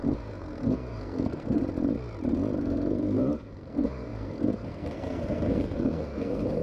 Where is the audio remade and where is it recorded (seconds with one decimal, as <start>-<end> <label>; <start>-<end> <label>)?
0.0-1.6 remade; 1.6-2.6 recorded; 2.6-6.6 remade